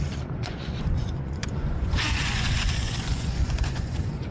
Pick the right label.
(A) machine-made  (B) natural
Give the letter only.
A